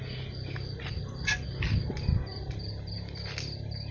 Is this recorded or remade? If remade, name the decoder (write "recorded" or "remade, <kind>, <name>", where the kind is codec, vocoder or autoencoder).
recorded